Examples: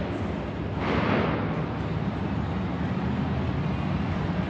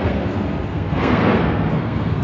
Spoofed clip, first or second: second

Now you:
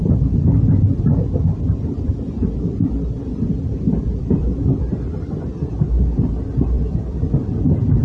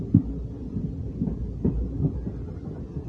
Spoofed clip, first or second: first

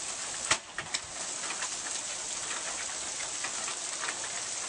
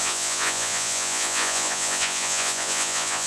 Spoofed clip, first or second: second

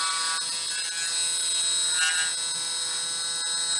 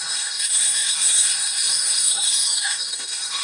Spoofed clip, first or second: second